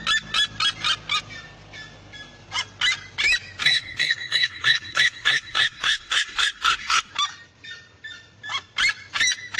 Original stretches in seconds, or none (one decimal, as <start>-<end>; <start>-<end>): 0.0-3.6; 7.1-9.6